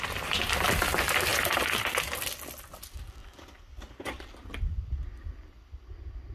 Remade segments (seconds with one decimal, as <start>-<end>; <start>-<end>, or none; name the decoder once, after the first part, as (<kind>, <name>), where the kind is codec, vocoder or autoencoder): none